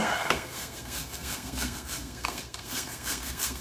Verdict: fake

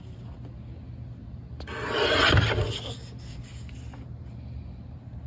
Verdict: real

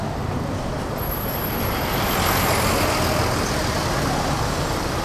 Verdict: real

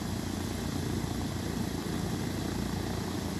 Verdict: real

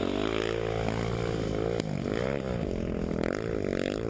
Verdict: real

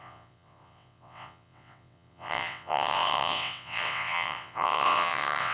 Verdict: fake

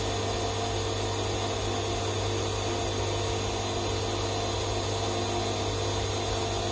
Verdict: real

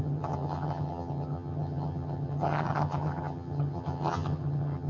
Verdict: fake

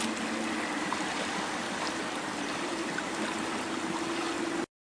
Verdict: real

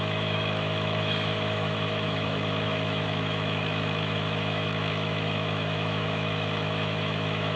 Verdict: fake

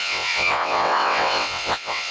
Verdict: fake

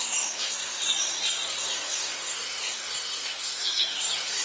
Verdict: fake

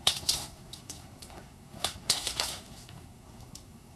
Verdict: fake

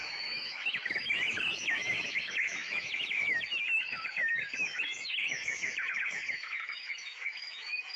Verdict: fake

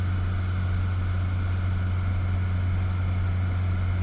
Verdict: real